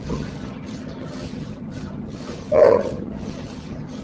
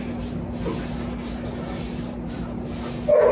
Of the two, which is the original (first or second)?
second